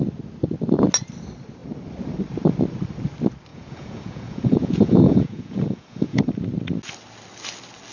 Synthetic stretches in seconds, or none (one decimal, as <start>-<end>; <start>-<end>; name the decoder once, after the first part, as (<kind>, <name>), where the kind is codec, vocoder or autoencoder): 3.5-6.2 (vocoder, Vocos)